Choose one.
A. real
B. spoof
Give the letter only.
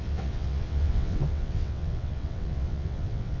B